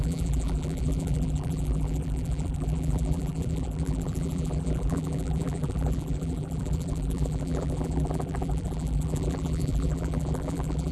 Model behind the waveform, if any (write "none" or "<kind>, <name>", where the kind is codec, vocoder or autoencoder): vocoder, BigVGAN v2